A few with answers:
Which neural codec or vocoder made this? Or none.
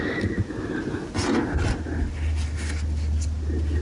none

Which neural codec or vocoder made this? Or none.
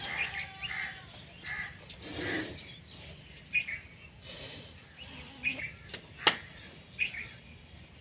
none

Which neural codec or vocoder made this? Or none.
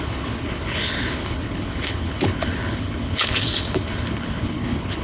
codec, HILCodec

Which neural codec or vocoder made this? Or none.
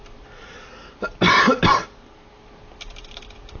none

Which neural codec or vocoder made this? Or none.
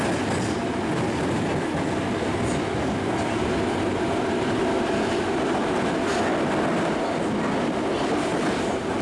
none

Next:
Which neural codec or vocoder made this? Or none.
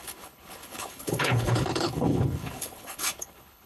codec, HILCodec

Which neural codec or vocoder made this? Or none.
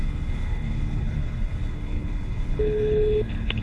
codec, HILCodec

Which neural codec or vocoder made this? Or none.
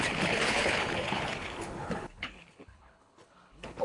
codec, HILCodec